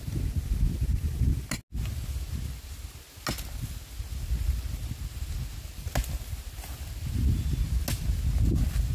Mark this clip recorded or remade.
recorded